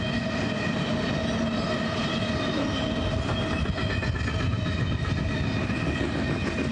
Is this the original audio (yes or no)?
yes